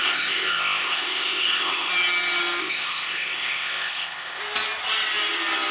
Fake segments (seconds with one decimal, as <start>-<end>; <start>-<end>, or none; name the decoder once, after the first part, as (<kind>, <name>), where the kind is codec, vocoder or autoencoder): 0.0-1.9 (codec, ZipCodec); 2.6-4.4